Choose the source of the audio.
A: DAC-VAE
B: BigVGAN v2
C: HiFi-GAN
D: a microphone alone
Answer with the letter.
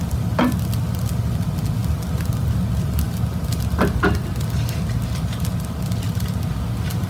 D